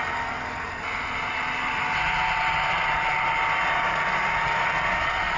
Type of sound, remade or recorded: recorded